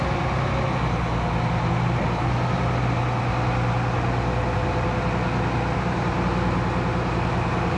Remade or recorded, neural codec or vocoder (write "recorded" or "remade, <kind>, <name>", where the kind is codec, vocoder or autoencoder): recorded